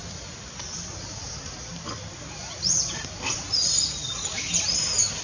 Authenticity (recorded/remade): recorded